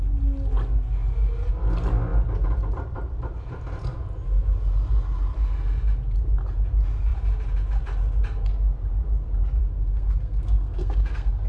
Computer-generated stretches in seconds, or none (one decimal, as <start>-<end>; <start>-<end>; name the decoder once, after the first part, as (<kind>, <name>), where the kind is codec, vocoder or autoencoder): 9.6-11.5 (codec, SNAC)